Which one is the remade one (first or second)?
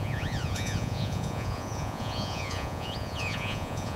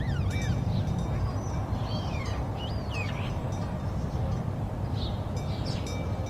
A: first